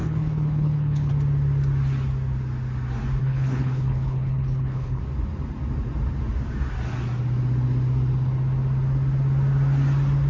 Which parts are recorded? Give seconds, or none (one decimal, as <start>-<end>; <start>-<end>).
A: 1.1-3.2; 5.0-10.3